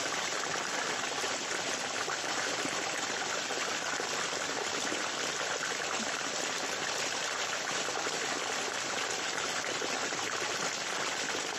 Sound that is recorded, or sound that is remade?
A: recorded